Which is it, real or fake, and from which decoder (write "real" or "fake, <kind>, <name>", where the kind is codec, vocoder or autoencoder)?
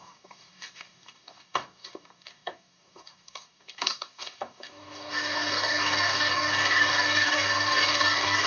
fake, codec, DAC